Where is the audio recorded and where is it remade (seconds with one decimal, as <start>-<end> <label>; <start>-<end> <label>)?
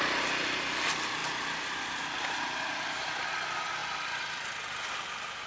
0.0-5.5 recorded